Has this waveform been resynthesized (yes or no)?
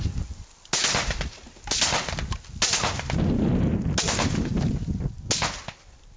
no